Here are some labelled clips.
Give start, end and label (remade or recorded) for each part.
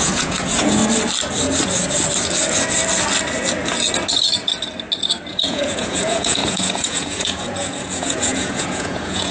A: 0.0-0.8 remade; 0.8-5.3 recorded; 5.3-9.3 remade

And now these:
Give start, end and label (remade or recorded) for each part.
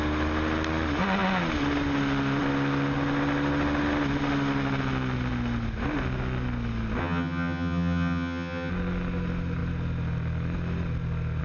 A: 0.0-7.0 recorded; 7.0-8.7 remade; 8.7-11.4 recorded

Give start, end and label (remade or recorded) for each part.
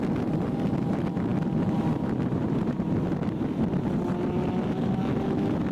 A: 0.0-5.7 recorded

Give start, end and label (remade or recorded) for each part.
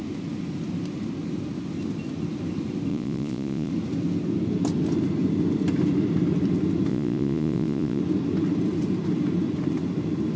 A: 0.0-2.9 recorded; 2.9-3.7 remade; 3.7-6.9 recorded; 6.9-8.0 remade; 8.0-10.4 recorded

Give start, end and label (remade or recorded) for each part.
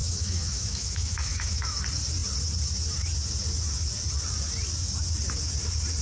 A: 0.0-1.8 remade; 1.8-6.0 recorded